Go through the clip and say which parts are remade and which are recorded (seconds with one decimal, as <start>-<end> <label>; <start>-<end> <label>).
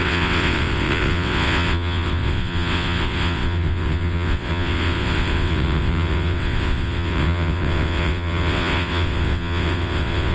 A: 0.0-10.3 remade